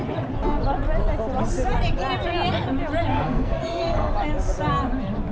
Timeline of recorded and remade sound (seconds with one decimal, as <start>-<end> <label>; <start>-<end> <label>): 0.0-3.1 recorded; 3.1-4.1 remade; 4.1-5.3 recorded